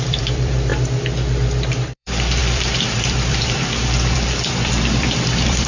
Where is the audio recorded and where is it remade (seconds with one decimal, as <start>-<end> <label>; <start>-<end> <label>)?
0.0-0.7 remade; 0.7-1.7 recorded; 1.7-5.7 remade